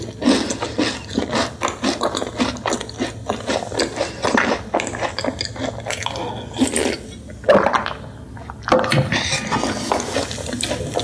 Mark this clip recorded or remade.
recorded